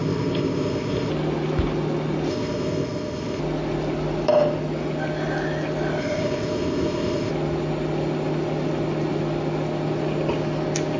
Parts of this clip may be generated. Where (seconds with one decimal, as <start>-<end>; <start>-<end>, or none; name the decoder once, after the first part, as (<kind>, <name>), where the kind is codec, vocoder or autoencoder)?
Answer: 0.0-1.1 (codec, ZipCodec); 2.3-3.4; 6.0-7.3